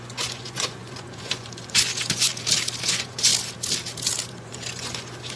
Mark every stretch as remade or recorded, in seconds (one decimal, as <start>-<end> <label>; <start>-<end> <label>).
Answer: 0.0-2.3 remade; 2.3-2.9 recorded; 2.9-3.3 remade; 3.3-4.3 recorded; 4.3-5.4 remade